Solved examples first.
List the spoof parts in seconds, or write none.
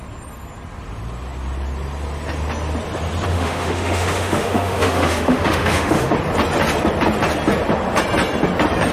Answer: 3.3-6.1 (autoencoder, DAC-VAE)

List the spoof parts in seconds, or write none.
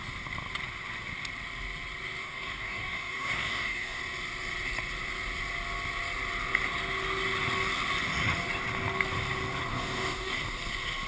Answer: 2.2-4.0 (codec, DAC); 9.7-10.4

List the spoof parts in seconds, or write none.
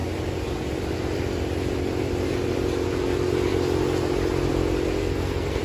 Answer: 5.0-5.6 (codec, SNAC)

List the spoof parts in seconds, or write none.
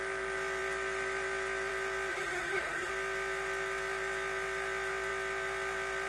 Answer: 2.1-2.9 (codec, SNAC)